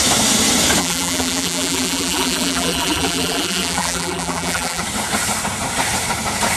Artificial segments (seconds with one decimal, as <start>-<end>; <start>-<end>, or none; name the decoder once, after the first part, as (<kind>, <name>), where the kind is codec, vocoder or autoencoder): 0.8-4.8 (vocoder, BigVGAN v2)